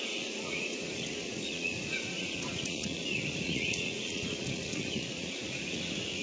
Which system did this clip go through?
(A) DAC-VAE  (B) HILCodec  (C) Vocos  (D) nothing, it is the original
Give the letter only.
C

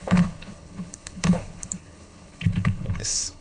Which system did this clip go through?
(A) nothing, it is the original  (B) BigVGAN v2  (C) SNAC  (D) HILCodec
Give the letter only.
D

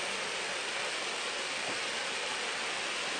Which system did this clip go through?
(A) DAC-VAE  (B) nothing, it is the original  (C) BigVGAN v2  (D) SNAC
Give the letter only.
B